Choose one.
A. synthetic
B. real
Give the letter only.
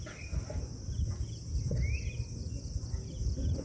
B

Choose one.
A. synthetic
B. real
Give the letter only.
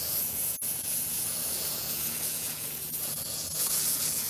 A